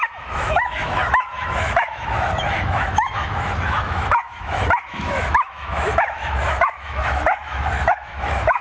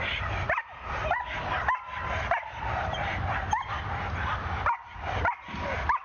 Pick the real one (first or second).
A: second